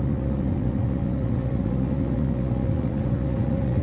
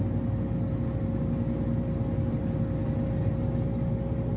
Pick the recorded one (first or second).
second